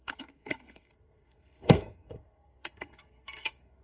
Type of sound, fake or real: fake